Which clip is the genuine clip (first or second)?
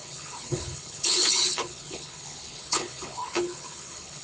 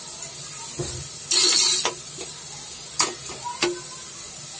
second